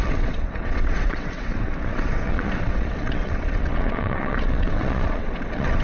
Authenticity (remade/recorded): remade